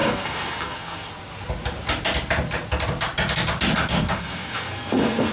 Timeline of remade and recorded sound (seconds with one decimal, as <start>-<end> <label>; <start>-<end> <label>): 0.0-1.1 remade; 1.1-3.9 recorded; 3.9-5.3 remade